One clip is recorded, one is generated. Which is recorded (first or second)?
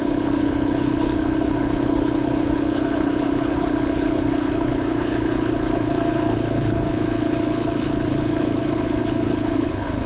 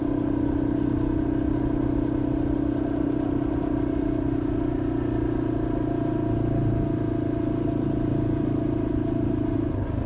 second